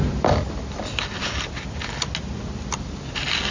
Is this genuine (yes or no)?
yes